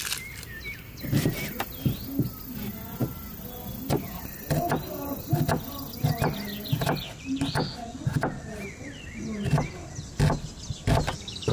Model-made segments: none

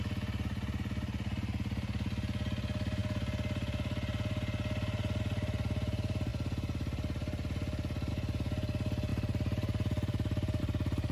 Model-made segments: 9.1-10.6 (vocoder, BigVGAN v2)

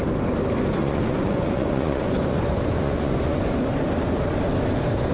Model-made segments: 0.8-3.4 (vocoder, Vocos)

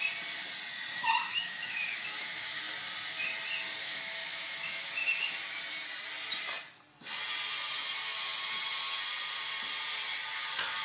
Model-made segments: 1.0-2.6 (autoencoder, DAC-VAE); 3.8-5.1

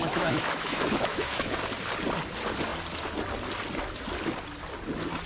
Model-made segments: 0.0-1.6 (autoencoder, DAC-VAE)

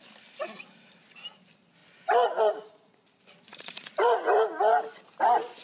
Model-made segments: 3.5-4.6 (vocoder, BigVGAN v2)

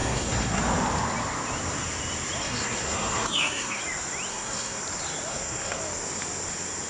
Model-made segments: 0.0-0.6 (codec, SNAC); 2.4-3.8; 4.3-4.8; 5.3-5.8

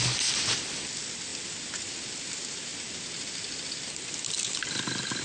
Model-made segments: none